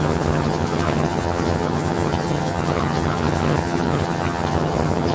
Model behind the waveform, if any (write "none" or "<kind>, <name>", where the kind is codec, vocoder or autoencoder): vocoder, HiFi-GAN